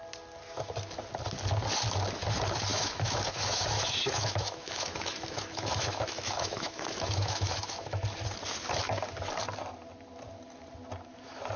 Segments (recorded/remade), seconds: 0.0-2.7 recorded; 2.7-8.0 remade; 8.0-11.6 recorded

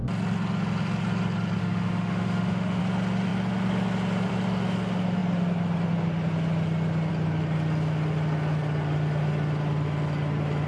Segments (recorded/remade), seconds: 0.0-1.6 recorded; 1.6-2.8 remade; 2.8-10.7 recorded